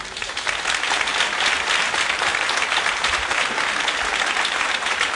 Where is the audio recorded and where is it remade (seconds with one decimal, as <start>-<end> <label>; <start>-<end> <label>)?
0.0-1.1 remade; 1.1-1.8 recorded; 1.8-5.2 remade